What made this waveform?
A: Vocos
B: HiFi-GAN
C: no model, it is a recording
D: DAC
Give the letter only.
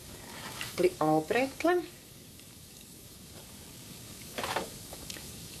D